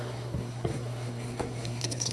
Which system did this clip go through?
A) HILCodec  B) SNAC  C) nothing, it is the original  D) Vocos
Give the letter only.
B